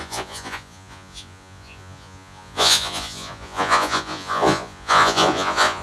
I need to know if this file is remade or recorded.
remade